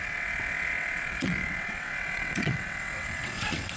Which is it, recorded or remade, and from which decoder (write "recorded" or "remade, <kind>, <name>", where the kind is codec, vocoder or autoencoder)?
remade, vocoder, WaveNeXt